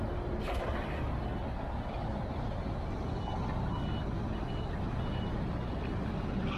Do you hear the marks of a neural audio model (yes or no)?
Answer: no